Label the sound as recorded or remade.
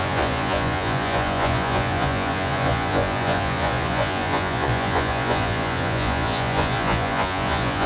remade